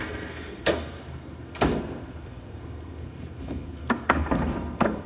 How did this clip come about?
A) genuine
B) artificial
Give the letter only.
B